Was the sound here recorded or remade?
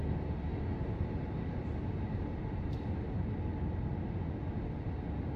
recorded